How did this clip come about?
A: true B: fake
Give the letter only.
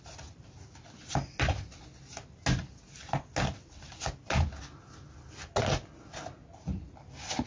A